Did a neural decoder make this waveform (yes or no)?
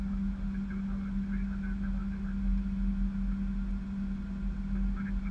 no